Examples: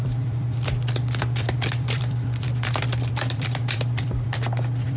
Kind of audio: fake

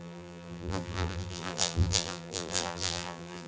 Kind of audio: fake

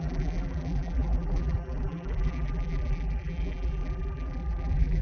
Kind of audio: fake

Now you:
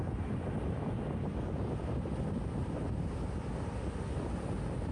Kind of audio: real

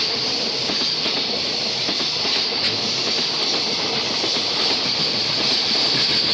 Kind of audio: real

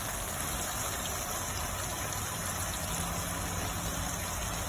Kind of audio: real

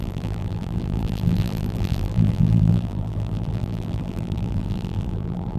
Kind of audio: fake